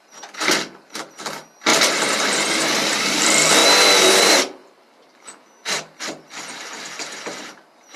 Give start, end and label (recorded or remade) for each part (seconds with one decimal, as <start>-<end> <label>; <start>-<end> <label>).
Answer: 0.0-3.6 remade; 3.6-4.1 recorded; 4.1-8.0 remade